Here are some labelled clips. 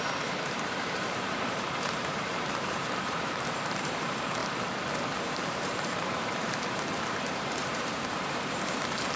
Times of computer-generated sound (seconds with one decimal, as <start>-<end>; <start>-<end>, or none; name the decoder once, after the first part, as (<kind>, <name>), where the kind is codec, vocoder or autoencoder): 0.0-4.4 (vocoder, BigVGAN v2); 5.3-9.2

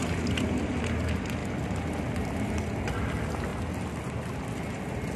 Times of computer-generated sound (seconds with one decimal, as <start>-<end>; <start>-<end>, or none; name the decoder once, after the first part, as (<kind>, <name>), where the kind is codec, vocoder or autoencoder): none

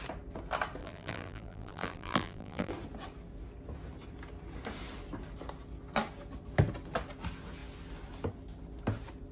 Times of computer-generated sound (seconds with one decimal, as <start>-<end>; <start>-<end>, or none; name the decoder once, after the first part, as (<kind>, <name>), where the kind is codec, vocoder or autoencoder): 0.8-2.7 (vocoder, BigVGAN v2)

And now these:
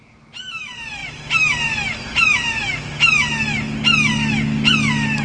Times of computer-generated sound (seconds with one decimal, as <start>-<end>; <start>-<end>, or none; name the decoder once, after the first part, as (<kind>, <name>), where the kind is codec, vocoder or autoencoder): none